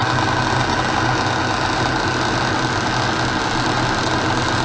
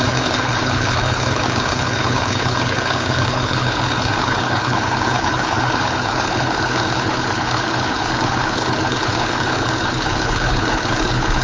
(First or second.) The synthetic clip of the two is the second